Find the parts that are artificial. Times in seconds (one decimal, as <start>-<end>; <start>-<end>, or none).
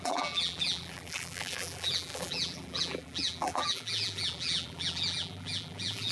0.0-6.1